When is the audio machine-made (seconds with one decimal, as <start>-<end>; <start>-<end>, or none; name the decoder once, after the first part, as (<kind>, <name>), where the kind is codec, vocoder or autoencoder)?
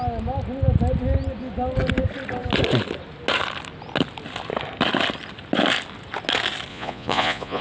6.7-7.6 (vocoder, Vocos)